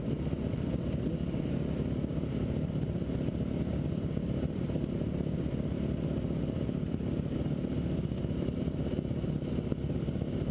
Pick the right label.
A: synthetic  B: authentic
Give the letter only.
B